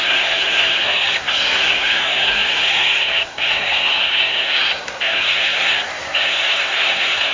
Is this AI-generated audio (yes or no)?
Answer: yes